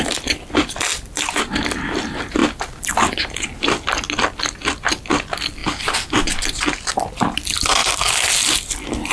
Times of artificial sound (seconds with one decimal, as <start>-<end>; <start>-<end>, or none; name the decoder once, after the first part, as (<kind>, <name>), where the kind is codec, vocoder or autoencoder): none